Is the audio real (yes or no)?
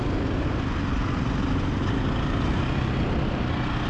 yes